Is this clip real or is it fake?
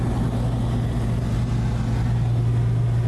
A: real